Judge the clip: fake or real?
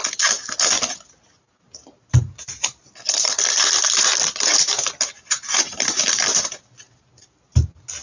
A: real